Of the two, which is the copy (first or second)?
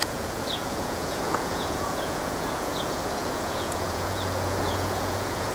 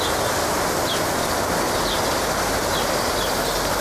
first